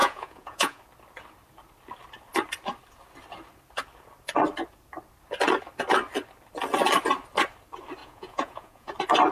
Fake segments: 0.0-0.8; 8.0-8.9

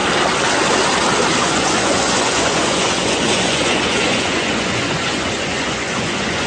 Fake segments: 1.4-6.5

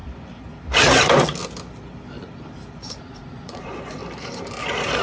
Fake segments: 3.0-4.0